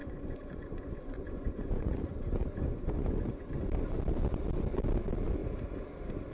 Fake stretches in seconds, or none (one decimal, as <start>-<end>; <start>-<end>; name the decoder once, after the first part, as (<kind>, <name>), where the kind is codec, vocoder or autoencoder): 0.0-3.6 (vocoder, Vocos)